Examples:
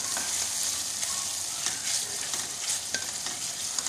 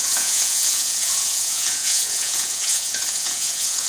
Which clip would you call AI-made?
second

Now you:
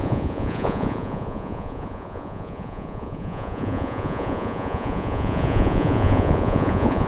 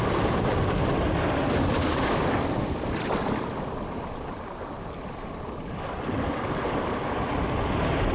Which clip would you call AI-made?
first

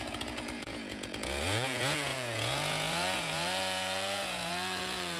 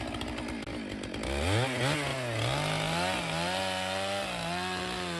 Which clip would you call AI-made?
first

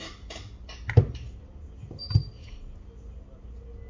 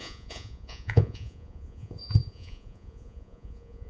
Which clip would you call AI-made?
second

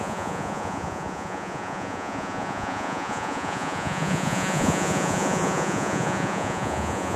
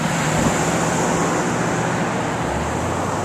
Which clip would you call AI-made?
first